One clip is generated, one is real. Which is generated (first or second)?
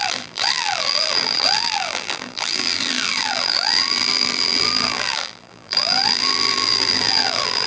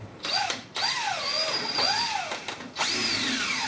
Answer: first